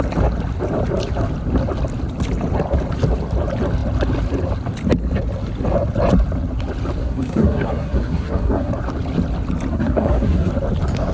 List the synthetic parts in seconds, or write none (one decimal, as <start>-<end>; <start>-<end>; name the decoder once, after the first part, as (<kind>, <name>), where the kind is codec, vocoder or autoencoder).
7.0-8.7 (codec, SNAC); 9.7-10.5